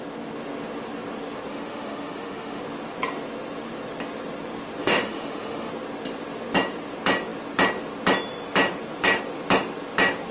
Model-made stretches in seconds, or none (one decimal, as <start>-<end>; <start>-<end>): 1.5-2.6; 4.8-5.7